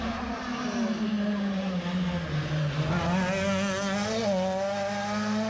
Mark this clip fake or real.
real